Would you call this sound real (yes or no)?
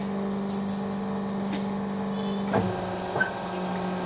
yes